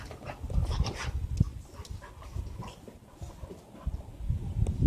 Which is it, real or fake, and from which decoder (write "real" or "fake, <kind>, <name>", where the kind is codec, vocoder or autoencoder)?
real